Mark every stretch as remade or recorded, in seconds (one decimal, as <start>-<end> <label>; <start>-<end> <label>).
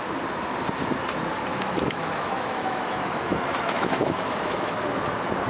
0.0-1.5 recorded; 1.5-4.8 remade; 4.8-5.5 recorded